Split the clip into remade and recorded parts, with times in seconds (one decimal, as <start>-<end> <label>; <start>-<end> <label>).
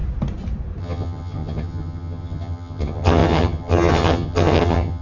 0.0-0.8 recorded; 0.8-5.0 remade